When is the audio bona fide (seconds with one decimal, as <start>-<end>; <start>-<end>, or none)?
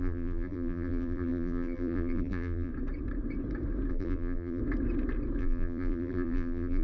2.7-3.9; 4.6-5.4